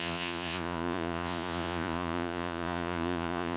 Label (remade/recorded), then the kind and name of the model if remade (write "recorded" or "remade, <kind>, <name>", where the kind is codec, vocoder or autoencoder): remade, vocoder, Vocos